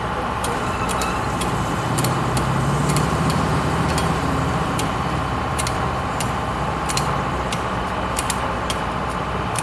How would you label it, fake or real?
fake